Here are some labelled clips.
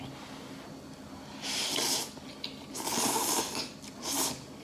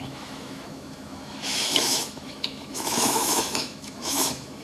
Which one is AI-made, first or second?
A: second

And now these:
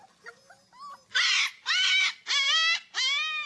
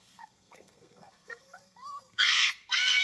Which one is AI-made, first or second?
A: second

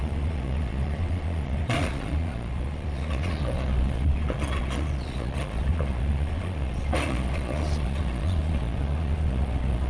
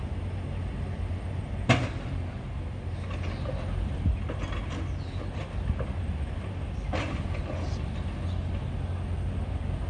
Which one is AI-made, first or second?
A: first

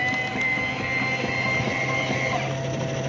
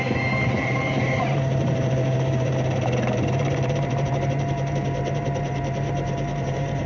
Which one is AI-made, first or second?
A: second